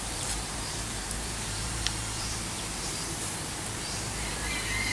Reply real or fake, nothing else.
fake